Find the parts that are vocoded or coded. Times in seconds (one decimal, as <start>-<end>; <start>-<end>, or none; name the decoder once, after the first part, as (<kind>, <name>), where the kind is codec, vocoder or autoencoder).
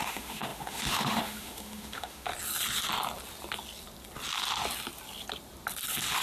0.0-2.3 (autoencoder, DAC-VAE)